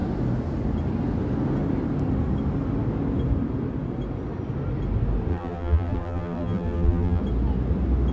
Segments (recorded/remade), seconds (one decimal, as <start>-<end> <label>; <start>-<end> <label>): 0.0-5.3 recorded; 5.3-7.2 remade; 7.2-8.1 recorded